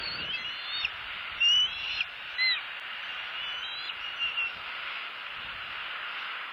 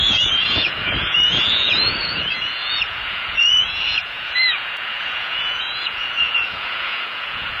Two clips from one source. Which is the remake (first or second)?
second